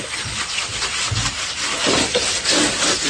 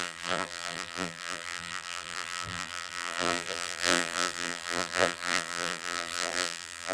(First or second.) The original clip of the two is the first